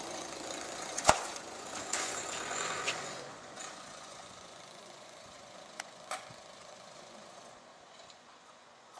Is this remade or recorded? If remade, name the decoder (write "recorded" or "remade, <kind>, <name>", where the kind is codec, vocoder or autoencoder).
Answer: remade, vocoder, Vocos